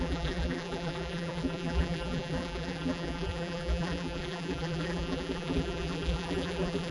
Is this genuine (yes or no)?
no